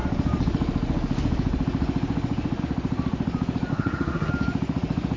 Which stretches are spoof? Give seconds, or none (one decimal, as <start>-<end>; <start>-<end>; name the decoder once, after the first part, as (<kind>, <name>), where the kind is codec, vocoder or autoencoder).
3.7-4.3 (codec, SNAC)